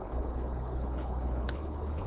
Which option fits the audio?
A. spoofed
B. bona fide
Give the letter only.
A